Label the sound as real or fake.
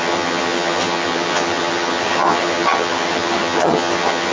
fake